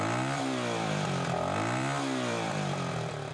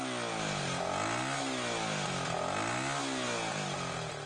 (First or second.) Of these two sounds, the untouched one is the second